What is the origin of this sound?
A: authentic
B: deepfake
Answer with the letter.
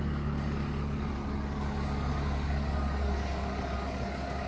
B